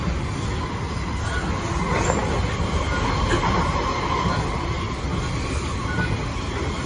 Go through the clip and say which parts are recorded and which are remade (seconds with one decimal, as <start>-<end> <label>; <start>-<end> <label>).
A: 0.0-6.9 recorded